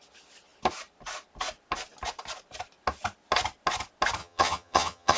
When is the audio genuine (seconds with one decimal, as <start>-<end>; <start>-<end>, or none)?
0.0-4.2

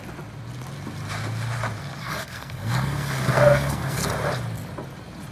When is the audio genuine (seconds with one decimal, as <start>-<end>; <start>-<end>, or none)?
0.0-2.0; 4.1-5.3